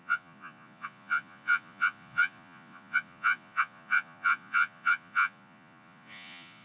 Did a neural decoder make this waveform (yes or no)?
yes